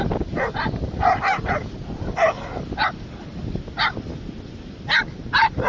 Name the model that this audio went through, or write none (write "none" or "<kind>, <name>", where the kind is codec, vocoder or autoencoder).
none